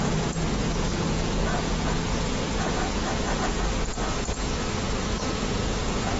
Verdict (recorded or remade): remade